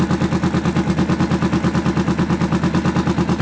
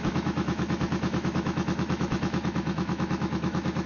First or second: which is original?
first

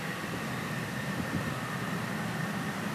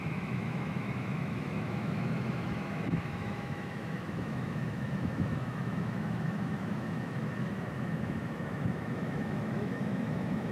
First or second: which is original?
first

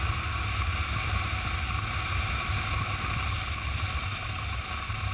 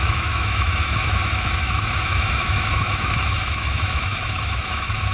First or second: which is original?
first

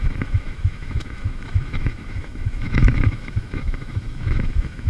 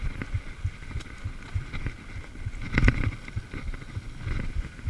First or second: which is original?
second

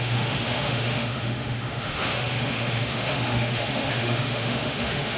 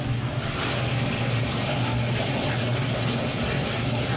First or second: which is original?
second